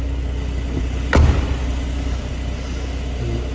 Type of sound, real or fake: real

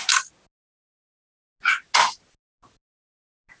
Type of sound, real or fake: real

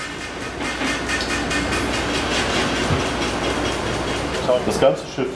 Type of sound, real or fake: real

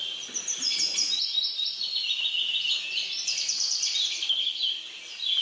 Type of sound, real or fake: real